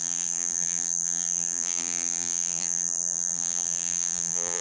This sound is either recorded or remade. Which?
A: remade